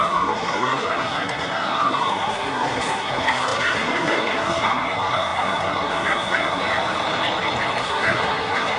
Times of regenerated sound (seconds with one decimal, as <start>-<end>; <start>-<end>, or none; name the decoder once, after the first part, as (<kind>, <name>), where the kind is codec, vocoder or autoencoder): 0.0-6.6 (codec, SNAC); 7.8-8.8